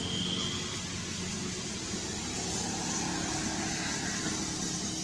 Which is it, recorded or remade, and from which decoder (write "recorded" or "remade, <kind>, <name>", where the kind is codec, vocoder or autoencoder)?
recorded